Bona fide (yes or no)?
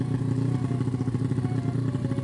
yes